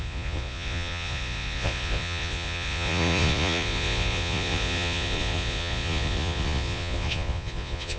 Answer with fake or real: fake